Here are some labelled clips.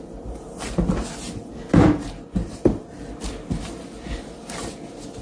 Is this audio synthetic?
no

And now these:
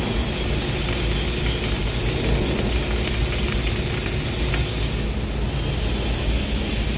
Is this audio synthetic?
no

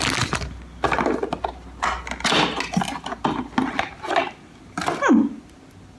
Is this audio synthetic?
no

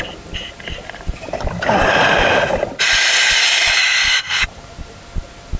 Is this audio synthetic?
no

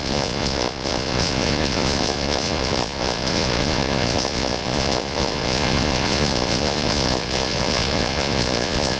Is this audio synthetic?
yes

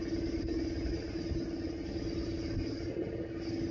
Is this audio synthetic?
no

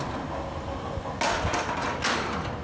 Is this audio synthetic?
no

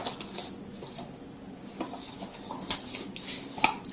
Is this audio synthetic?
no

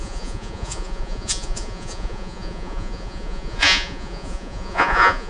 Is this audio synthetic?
yes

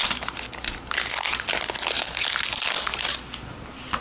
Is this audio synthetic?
no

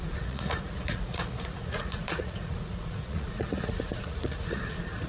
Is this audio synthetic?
yes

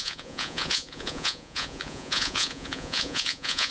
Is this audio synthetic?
yes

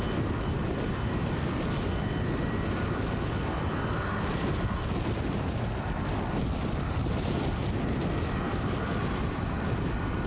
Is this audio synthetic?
no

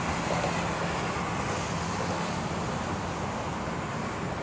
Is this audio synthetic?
no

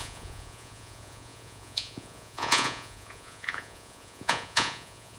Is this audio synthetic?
yes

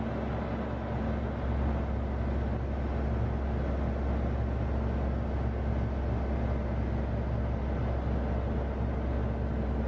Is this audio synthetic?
no